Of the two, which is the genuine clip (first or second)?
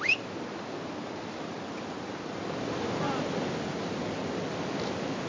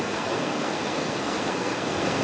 first